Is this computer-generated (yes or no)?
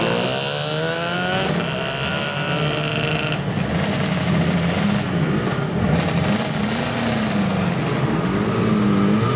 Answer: no